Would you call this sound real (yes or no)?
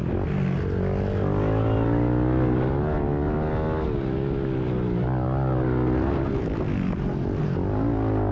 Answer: yes